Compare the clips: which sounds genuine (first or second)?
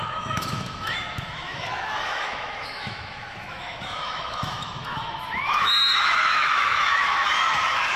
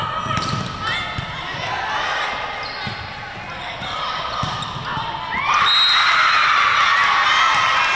second